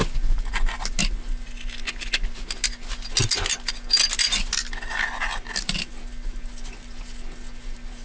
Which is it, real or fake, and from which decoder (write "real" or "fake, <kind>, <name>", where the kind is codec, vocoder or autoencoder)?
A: real